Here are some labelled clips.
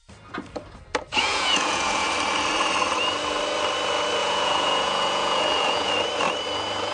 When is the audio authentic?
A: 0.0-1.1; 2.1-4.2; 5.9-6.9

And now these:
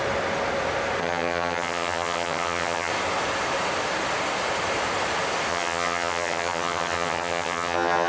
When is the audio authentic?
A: 0.0-1.0; 2.9-5.5

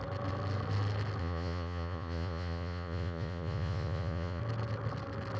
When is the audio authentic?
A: 0.0-1.2; 4.4-5.4